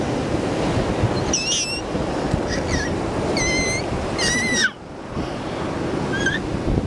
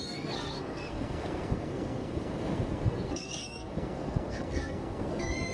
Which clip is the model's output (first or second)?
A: second